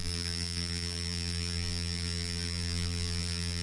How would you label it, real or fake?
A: fake